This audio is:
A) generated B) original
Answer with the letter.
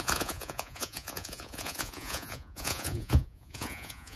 A